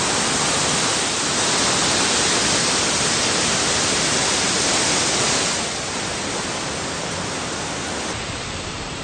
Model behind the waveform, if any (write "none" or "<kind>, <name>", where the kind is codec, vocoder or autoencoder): none